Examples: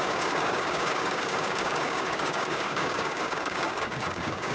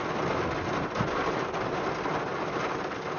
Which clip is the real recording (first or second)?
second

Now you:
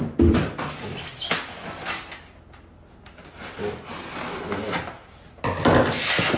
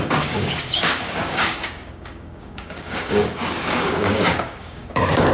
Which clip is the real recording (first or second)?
first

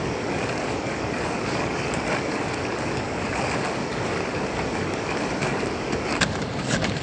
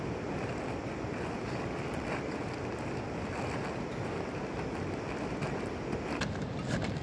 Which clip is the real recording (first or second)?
second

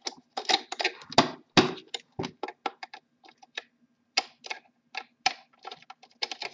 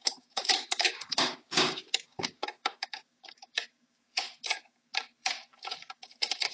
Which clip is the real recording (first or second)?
first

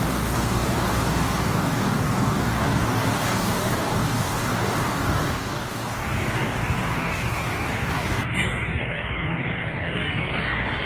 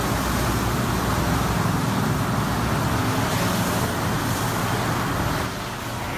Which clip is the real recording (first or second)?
second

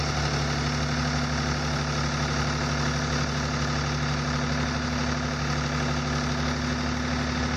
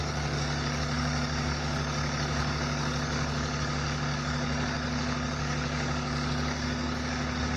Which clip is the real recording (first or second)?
first